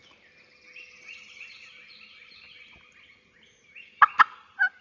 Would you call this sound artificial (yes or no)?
no